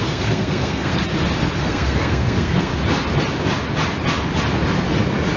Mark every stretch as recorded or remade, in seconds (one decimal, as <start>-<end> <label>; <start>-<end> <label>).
0.0-1.0 remade; 1.0-1.6 recorded; 1.6-2.7 remade; 2.7-5.4 recorded